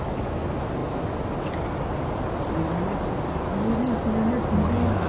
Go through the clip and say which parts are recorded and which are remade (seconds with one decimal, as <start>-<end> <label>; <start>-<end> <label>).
0.0-5.1 recorded